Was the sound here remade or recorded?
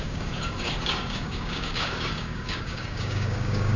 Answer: remade